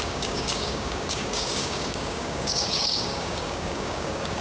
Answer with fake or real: fake